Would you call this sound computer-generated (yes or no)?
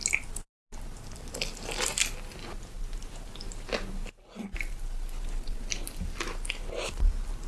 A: no